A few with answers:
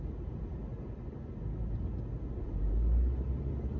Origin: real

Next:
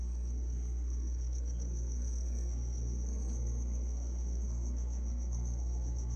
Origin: fake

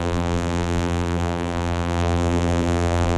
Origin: fake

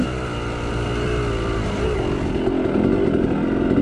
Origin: real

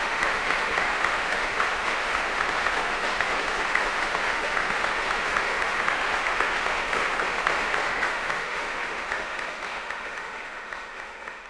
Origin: fake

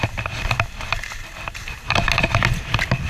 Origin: real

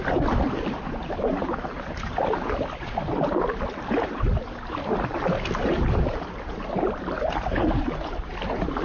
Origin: real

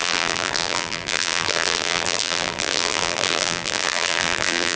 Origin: fake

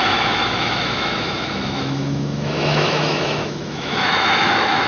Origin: fake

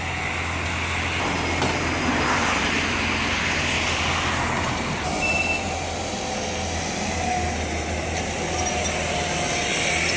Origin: real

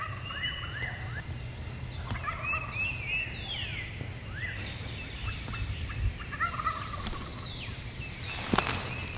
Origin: real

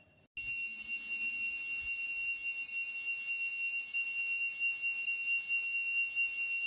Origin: real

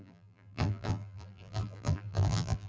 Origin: fake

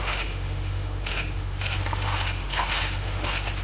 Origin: fake